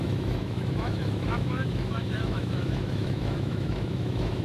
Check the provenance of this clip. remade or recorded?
remade